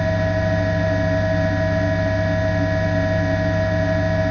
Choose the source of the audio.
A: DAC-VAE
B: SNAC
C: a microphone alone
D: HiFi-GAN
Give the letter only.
C